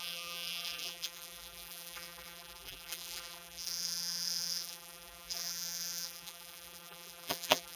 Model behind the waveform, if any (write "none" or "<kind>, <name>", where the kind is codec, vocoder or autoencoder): vocoder, BigVGAN v2